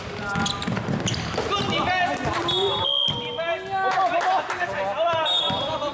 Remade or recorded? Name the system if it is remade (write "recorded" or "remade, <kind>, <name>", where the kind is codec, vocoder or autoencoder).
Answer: recorded